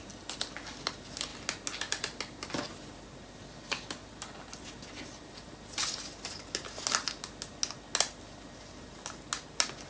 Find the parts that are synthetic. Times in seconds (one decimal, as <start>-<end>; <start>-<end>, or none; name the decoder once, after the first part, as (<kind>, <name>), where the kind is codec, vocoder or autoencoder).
none